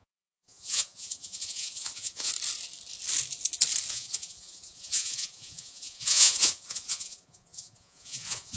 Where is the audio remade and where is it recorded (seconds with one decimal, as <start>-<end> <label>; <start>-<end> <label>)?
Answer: 0.0-2.3 remade; 2.3-3.9 recorded; 3.9-8.6 remade